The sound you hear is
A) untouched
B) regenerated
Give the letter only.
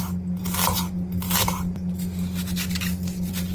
A